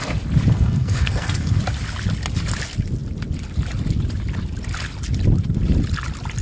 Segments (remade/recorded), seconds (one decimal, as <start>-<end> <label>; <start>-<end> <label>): 0.0-0.5 recorded; 0.5-1.6 remade; 1.6-6.4 recorded